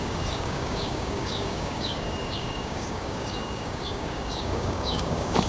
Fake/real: fake